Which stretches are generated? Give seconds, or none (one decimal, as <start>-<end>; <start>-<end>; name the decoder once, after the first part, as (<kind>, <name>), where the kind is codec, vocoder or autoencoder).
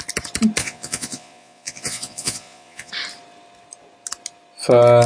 0.6-2.9 (vocoder, Vocos)